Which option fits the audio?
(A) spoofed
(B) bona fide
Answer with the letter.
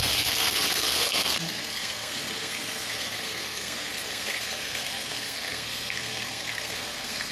A